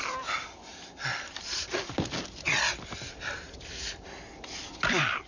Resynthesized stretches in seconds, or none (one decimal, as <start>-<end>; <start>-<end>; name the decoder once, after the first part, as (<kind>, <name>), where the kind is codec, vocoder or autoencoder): none